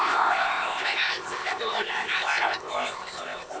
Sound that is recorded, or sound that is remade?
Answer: remade